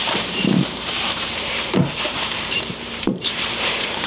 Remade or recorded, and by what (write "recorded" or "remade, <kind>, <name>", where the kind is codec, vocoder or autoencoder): remade, vocoder, BigVGAN v2